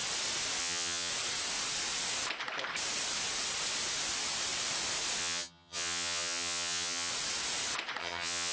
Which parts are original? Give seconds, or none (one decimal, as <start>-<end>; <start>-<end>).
0.0-0.6; 1.1-5.2; 7.1-8.0